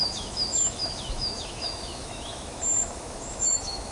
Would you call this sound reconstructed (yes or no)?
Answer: yes